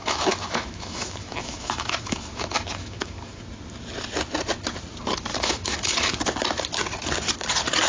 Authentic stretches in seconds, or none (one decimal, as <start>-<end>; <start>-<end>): 3.4-5.3; 6.2-7.9